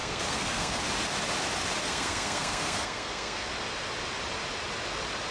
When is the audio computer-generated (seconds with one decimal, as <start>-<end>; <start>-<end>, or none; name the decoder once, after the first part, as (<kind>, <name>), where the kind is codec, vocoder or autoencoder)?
0.0-0.8 (codec, SNAC); 1.8-3.5